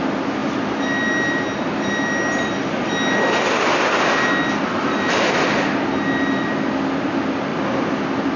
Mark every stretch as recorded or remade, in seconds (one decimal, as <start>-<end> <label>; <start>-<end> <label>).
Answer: 0.0-8.4 recorded